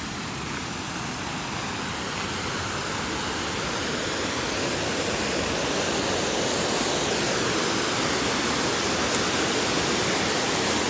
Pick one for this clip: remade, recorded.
recorded